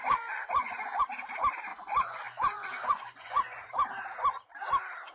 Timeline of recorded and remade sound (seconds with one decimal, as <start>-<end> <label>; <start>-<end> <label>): 0.0-1.0 remade; 1.0-1.7 recorded; 1.7-3.7 remade; 3.7-5.1 recorded